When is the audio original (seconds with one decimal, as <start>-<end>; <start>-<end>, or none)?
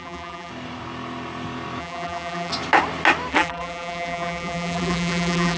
0.5-1.8; 2.5-3.3